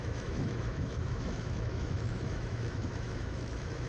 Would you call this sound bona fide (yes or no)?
no